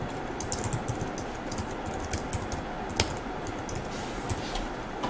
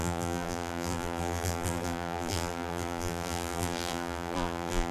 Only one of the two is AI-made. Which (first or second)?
second